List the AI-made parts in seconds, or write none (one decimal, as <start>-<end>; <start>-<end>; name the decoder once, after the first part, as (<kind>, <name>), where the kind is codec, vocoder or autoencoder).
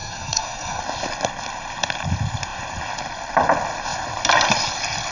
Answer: 0.0-0.8 (codec, SNAC)